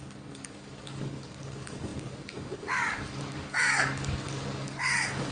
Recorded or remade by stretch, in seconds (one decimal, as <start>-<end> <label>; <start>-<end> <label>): 0.0-5.3 remade